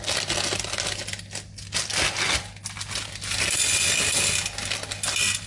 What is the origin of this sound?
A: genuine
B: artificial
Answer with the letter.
A